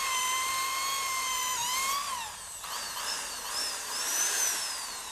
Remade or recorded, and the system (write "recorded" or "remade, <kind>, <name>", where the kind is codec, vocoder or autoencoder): remade, vocoder, BigVGAN v2